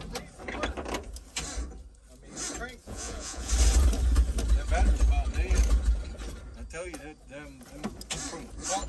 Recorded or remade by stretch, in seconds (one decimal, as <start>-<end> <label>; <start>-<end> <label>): 0.0-2.8 recorded; 2.8-3.5 remade; 3.5-8.9 recorded